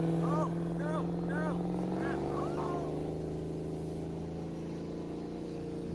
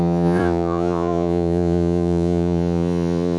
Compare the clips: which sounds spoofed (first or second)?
second